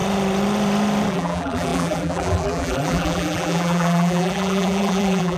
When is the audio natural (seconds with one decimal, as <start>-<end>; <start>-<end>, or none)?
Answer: 0.0-1.1